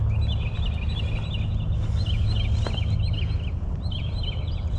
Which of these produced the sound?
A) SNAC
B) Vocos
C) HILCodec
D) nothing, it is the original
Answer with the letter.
D